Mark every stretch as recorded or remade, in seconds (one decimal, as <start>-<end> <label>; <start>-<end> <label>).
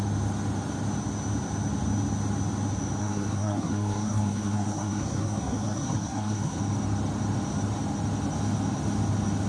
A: 0.0-3.0 recorded; 3.0-6.6 remade; 6.6-9.5 recorded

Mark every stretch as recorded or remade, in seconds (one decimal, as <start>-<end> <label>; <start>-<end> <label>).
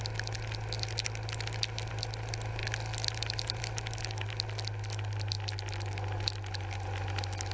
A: 0.0-7.5 recorded